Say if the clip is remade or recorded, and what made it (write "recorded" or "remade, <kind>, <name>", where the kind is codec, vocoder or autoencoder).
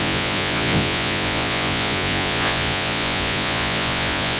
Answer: remade, vocoder, Vocos